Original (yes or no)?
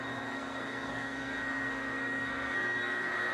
no